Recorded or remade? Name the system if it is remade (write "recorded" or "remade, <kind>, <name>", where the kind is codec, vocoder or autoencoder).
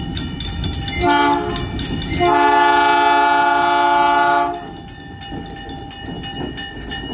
recorded